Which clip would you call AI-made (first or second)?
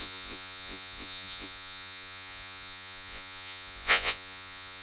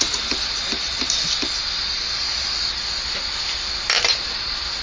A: first